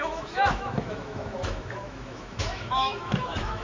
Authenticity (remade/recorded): remade